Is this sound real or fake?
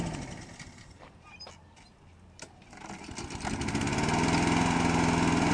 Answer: real